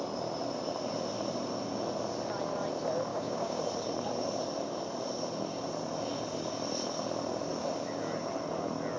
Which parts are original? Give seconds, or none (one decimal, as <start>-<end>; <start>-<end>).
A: 0.0-3.1; 3.6-9.0

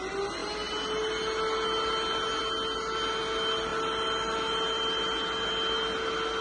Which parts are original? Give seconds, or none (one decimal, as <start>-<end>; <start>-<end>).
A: 0.0-6.4